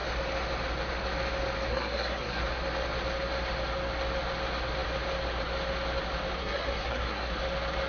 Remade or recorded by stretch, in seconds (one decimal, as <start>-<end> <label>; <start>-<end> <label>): 0.0-1.7 recorded; 1.7-2.4 remade; 2.4-6.4 recorded; 6.4-7.3 remade; 7.3-7.9 recorded